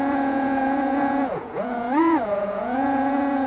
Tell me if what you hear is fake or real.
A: fake